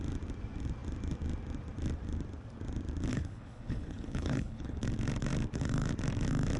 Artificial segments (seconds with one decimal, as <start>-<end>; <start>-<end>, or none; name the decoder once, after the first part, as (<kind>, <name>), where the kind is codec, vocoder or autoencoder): 3.1-4.8 (codec, HILCodec)